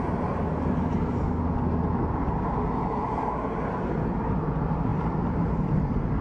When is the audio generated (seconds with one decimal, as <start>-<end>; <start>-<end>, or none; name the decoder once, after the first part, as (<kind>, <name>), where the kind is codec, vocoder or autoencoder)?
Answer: 4.9-6.2 (vocoder, BigVGAN v2)